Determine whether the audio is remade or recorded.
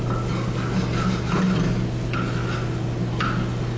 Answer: recorded